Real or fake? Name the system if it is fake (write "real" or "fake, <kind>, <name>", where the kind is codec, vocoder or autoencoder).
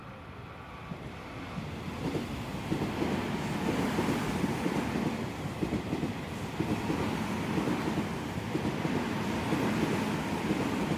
real